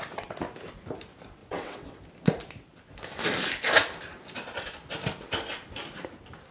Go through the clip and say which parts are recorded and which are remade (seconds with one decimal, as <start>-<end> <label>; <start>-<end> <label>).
0.0-1.4 recorded; 1.4-2.0 remade; 2.0-6.5 recorded